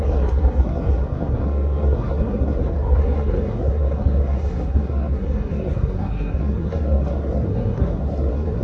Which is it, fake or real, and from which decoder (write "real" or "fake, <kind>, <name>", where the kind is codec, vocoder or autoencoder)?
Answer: fake, codec, SNAC